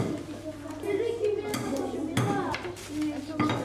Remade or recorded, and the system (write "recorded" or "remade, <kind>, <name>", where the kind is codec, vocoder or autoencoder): recorded